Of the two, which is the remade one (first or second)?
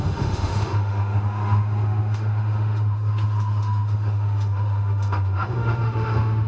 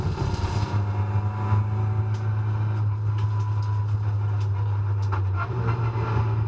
first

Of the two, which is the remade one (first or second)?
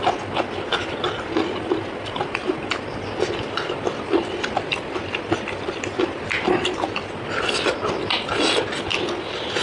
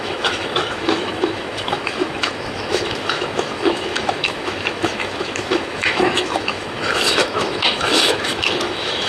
second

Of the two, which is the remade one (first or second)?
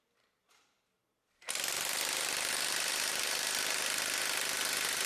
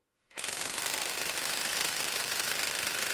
second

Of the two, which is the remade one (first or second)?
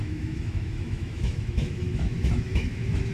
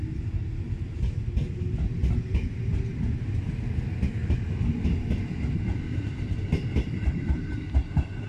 first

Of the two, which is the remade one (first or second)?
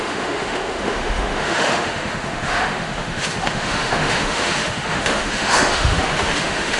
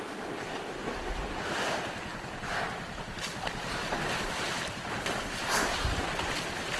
first